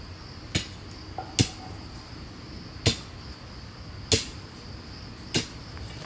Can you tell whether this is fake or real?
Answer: real